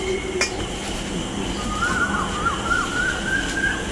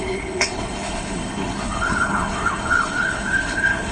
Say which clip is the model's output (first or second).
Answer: second